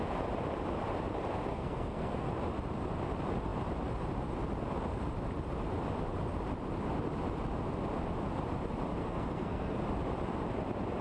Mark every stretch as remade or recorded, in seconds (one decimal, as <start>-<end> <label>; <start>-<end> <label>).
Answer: 0.0-1.5 recorded; 1.5-2.3 remade; 2.3-9.0 recorded; 9.0-9.8 remade; 9.8-11.0 recorded